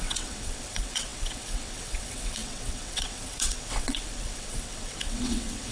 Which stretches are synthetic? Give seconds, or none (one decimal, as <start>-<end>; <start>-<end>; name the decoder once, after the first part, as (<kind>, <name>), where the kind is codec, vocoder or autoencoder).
0.0-5.7 (vocoder, WaveNeXt)